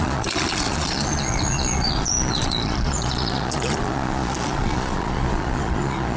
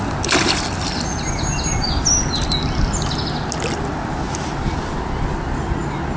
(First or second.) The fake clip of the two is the first